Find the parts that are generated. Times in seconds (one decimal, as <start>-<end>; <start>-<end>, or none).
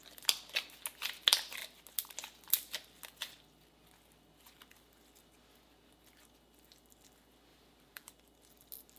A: 7.5-8.1